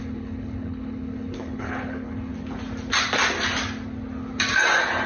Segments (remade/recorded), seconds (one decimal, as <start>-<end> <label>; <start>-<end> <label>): 0.0-2.3 remade; 2.3-5.1 recorded